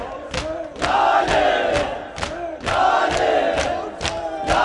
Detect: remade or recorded recorded